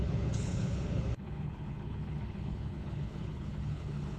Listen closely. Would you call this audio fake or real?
fake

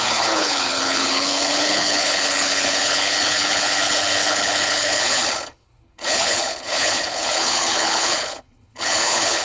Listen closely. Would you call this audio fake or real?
fake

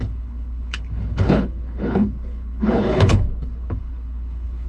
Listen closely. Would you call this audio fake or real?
fake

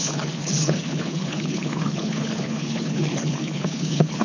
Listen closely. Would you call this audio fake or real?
fake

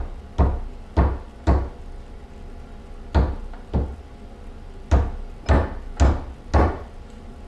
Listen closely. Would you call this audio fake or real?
real